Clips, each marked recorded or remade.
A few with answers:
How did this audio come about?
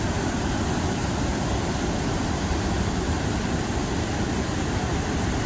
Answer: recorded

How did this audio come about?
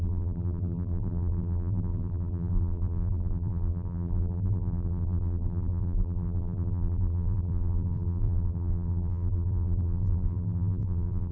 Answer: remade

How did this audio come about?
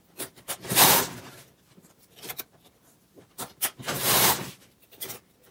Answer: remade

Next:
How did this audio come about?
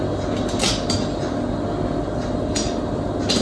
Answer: recorded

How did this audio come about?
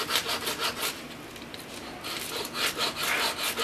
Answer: recorded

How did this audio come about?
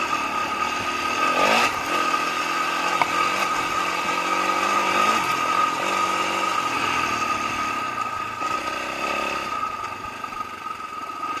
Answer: recorded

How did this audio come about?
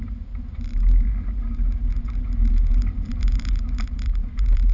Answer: remade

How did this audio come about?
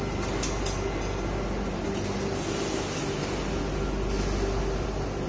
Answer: recorded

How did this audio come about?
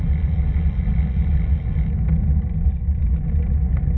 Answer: recorded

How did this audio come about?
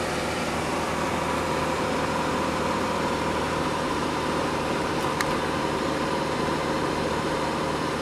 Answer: remade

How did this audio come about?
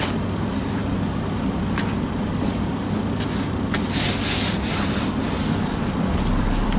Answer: remade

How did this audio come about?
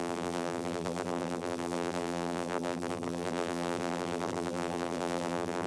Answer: remade